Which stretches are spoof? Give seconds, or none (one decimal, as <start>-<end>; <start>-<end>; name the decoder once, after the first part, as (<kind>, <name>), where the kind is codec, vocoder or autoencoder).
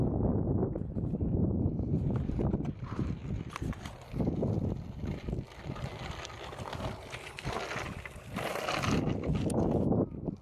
0.6-3.1 (vocoder, BigVGAN v2)